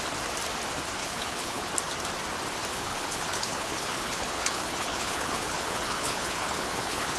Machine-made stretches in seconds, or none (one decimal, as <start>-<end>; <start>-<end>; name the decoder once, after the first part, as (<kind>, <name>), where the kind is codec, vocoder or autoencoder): 1.0-1.7 (codec, HILCodec); 2.7-7.2